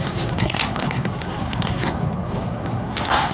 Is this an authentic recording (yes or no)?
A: no